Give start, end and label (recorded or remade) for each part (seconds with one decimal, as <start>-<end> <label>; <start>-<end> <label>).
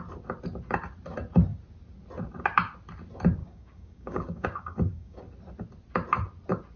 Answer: 0.0-3.4 recorded; 3.4-5.2 remade; 5.2-6.8 recorded